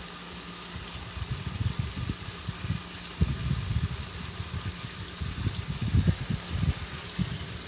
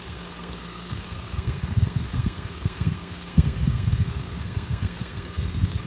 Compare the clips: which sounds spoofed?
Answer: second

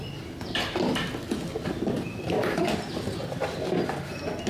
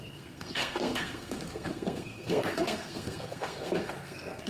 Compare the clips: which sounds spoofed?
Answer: second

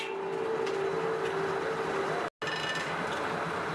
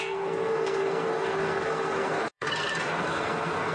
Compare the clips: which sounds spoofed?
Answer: second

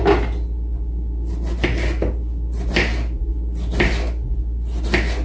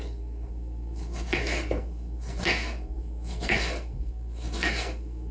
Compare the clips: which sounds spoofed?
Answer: second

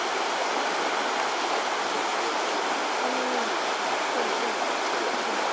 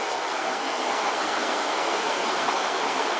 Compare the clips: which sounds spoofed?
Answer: second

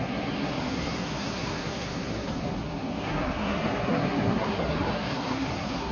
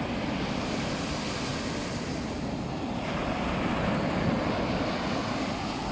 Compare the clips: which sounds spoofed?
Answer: first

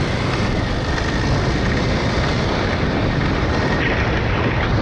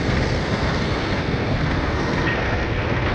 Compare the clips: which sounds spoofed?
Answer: second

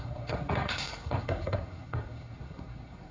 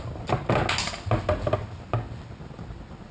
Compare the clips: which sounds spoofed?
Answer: first